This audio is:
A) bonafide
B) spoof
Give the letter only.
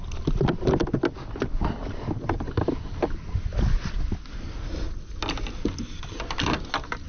A